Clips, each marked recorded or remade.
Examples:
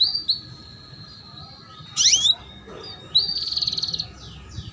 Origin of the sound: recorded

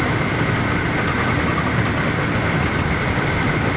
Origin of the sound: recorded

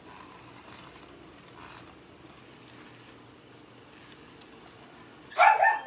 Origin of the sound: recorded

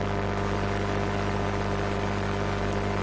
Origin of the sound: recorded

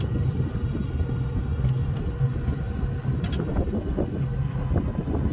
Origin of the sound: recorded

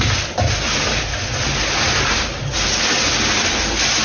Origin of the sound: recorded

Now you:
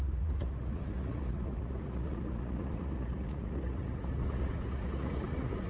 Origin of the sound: remade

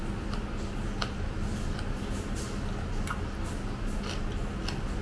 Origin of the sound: recorded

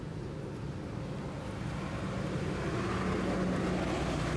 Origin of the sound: recorded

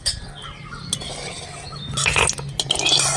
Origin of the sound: recorded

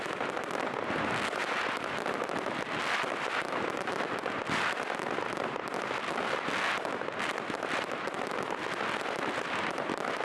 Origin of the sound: recorded